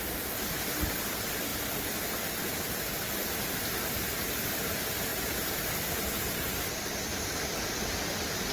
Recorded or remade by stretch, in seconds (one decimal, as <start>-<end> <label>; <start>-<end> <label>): 0.0-5.1 recorded; 5.1-6.3 remade; 6.3-8.5 recorded